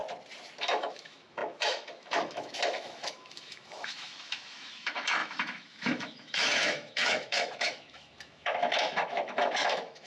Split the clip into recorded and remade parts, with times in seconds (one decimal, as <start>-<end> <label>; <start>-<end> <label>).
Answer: 0.0-0.6 recorded; 0.6-10.1 remade